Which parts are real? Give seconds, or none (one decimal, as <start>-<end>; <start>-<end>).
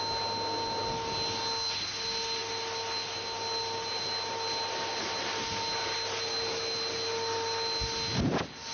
0.0-8.7